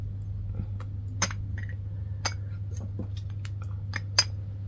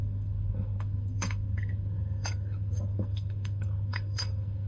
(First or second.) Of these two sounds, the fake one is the second